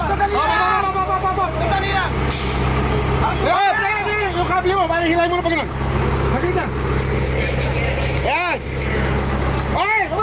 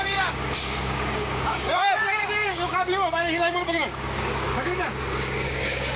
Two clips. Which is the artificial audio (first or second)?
second